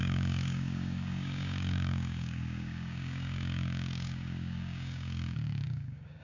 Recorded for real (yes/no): no